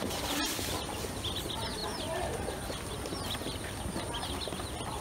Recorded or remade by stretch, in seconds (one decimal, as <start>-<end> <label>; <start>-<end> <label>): 0.0-5.0 recorded